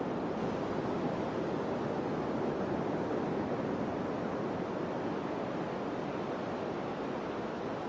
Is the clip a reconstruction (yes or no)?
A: no